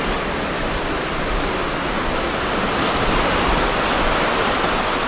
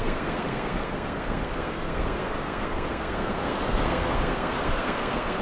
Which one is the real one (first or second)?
first